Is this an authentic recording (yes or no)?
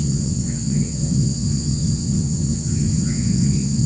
no